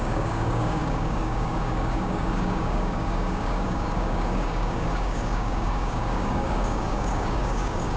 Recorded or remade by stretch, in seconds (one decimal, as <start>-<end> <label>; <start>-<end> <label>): 0.0-8.0 remade